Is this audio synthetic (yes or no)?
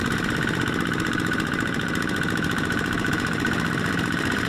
yes